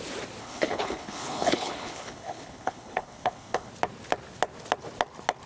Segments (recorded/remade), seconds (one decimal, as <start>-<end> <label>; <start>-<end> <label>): 0.0-0.4 recorded; 0.4-3.7 remade; 3.7-5.5 recorded